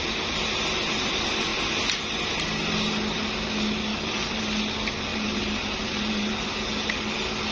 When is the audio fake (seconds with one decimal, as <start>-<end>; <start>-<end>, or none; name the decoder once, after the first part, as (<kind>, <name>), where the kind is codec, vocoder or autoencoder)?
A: 3.9-4.4 (vocoder, BigVGAN v2); 5.1-6.5